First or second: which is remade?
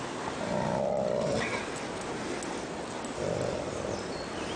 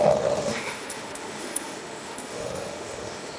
second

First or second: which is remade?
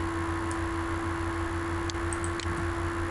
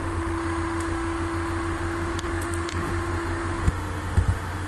second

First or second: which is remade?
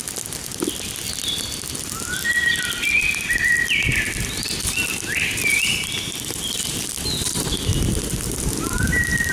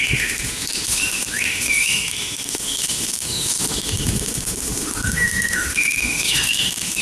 second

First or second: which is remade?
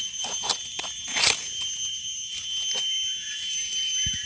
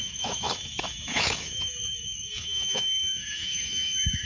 second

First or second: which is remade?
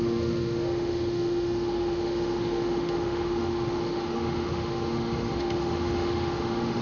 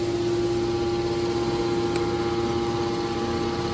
first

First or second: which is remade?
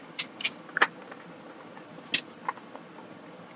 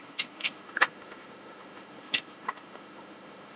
second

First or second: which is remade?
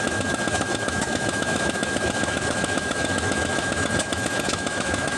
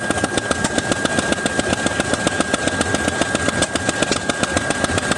first